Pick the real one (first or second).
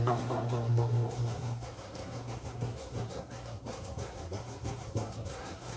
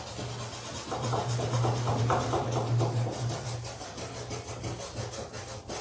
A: second